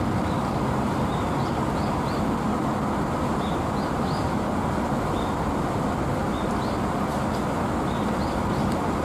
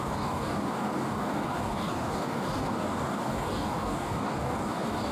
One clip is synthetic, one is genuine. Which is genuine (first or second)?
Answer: first